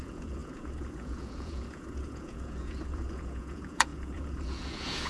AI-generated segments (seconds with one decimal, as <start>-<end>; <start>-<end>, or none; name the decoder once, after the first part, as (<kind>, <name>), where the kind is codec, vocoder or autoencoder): 0.0-5.1 (vocoder, Vocos)